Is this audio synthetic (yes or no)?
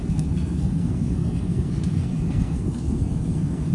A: yes